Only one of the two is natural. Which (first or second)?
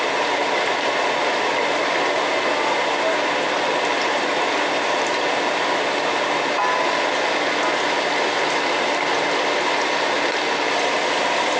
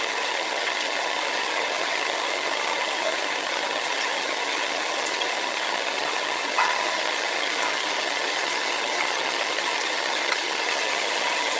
first